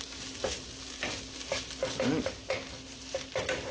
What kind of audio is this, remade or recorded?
recorded